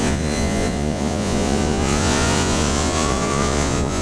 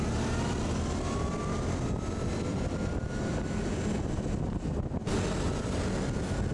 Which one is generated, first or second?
first